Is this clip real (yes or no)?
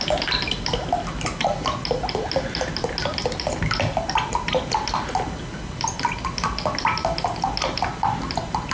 yes